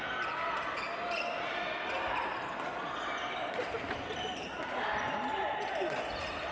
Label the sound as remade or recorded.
recorded